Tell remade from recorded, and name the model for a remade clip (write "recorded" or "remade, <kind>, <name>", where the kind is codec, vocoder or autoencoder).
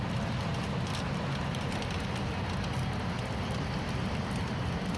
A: recorded